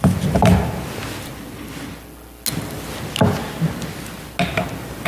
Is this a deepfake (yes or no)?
no